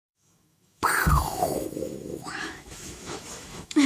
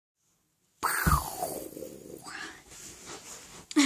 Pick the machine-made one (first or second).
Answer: first